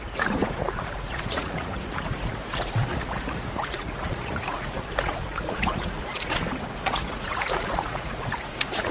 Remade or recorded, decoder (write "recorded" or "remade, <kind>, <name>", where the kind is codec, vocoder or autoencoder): remade, vocoder, Vocos